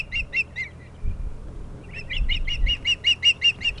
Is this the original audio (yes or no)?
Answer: yes